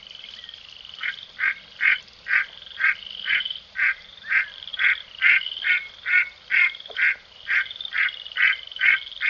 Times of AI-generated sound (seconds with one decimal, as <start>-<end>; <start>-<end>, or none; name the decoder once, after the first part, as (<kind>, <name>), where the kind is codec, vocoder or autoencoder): none